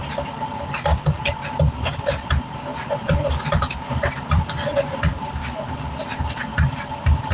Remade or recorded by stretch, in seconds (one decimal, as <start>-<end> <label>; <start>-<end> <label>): 0.0-2.1 remade; 2.1-2.7 recorded; 2.7-4.1 remade; 4.1-5.1 recorded; 5.1-5.7 remade; 5.7-6.5 recorded; 6.5-7.3 remade